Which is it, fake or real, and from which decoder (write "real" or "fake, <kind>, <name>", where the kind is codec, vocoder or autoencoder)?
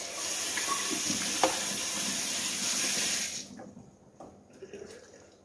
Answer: real